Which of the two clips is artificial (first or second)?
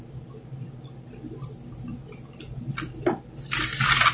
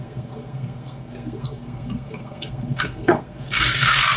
second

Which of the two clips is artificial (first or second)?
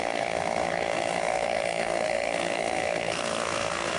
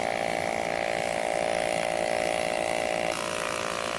first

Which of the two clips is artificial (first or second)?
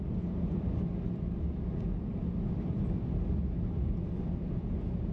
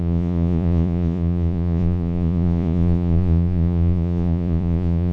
second